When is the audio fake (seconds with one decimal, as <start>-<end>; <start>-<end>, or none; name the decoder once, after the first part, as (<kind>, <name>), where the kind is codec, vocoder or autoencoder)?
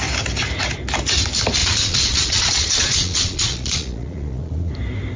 1.6-4.7 (vocoder, Vocos)